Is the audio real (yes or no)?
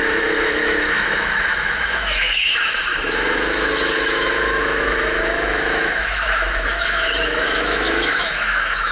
no